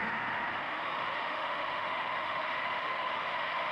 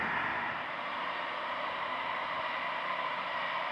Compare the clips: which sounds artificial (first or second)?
first